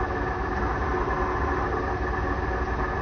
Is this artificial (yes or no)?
no